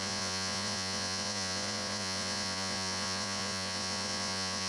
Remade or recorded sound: remade